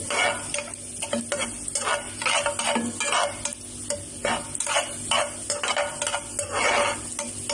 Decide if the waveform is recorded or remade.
recorded